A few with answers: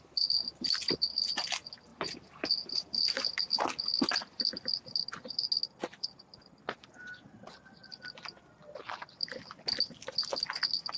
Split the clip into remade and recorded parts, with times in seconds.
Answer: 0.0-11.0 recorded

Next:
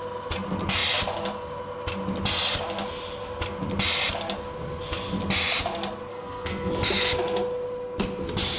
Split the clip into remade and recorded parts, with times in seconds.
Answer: 0.0-6.1 recorded; 6.1-6.7 remade; 6.7-8.6 recorded

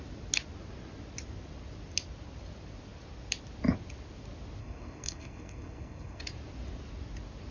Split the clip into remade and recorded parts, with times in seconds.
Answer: 0.0-4.6 recorded; 4.6-6.2 remade; 6.2-7.5 recorded